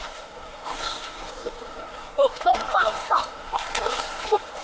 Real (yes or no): no